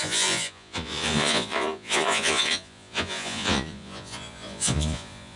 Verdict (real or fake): fake